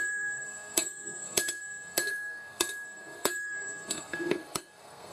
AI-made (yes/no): yes